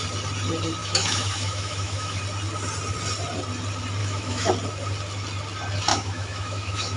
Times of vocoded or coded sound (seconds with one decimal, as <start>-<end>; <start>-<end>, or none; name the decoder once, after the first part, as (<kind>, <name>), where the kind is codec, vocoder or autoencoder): 0.8-2.2 (autoencoder, DAC-VAE); 4.0-4.5; 5.9-7.0